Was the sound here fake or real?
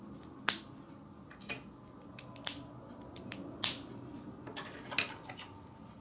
real